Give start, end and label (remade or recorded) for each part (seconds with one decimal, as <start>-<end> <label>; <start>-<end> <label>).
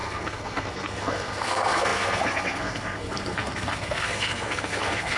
0.0-5.2 remade